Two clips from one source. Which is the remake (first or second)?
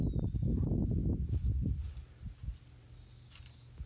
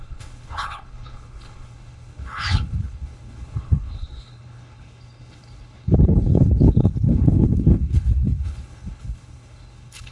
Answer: second